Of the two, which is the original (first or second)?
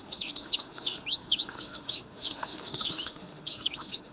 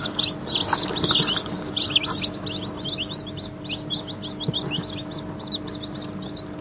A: second